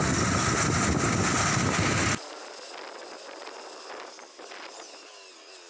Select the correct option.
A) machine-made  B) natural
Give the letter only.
B